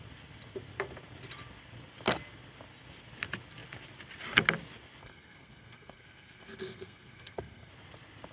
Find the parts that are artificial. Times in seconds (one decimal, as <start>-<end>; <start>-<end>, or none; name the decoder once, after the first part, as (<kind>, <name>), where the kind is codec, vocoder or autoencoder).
5.0-7.7 (codec, SNAC)